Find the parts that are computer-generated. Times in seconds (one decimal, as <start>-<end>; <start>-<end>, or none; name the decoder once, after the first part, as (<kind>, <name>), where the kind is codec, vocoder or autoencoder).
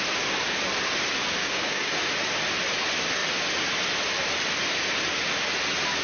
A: 1.4-1.9 (codec, DAC)